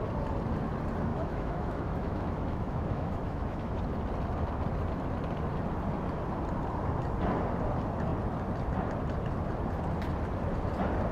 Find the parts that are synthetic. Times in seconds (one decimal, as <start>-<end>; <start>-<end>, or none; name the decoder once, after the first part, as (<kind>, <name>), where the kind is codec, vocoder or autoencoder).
1.1-3.8 (autoencoder, DAC-VAE)